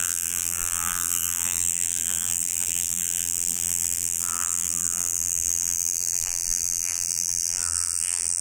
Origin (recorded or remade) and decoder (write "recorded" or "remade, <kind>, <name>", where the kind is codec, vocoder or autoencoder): remade, vocoder, BigVGAN v2